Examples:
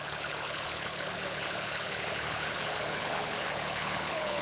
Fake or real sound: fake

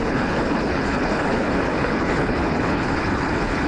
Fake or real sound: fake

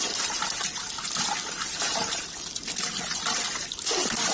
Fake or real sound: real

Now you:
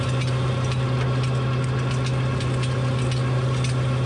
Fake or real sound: real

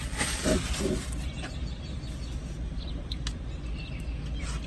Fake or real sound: real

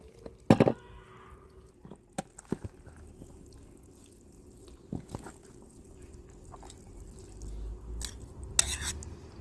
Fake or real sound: real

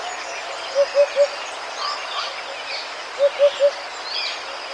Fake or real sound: real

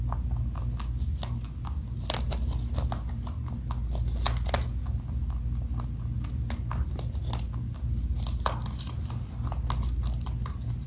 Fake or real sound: real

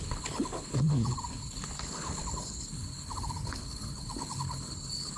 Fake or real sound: fake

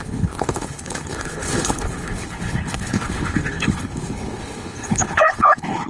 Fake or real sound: fake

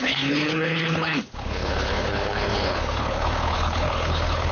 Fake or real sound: fake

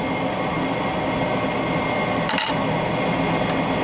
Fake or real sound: real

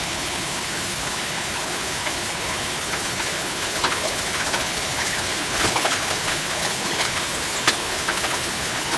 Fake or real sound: fake